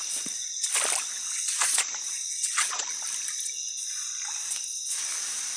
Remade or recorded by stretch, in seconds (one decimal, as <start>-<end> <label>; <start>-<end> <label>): 0.0-1.2 recorded; 1.2-2.9 remade; 2.9-5.6 recorded